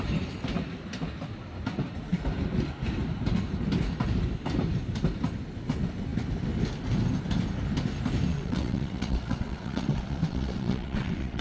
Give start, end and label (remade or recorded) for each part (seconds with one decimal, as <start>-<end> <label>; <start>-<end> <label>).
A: 0.0-8.3 recorded; 8.3-11.4 remade